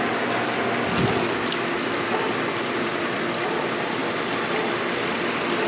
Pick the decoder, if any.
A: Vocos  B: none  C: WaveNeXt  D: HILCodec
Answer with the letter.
B